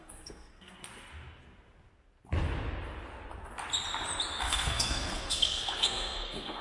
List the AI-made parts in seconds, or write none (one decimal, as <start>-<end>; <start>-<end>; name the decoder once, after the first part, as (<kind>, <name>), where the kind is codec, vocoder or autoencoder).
0.0-0.8 (codec, SNAC); 4.4-6.6